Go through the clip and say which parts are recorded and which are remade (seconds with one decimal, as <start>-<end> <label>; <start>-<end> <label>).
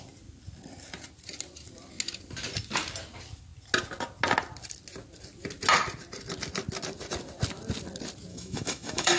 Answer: 0.0-8.3 recorded; 8.3-9.2 remade